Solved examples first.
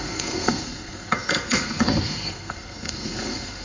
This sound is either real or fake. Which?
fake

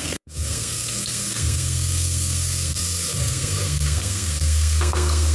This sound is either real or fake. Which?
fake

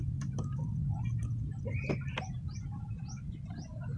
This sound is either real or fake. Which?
real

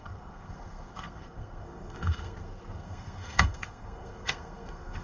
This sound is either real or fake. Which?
fake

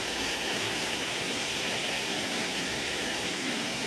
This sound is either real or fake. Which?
fake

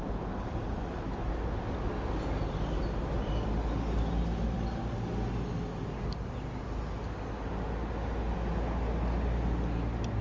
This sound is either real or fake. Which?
real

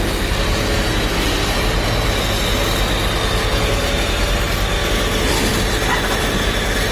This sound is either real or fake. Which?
real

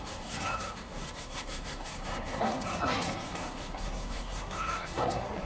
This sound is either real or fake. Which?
fake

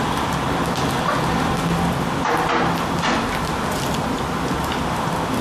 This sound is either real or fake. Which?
real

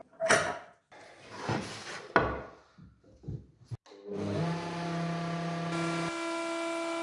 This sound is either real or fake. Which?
real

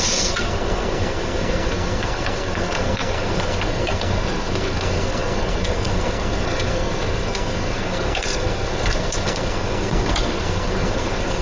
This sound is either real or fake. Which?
fake